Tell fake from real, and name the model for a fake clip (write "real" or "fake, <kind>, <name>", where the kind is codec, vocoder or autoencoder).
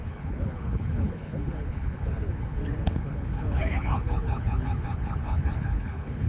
fake, codec, HILCodec